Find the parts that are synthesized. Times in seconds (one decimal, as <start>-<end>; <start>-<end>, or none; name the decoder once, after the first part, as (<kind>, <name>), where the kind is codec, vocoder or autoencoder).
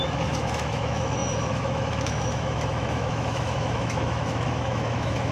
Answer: 0.0-5.3 (autoencoder, DAC-VAE)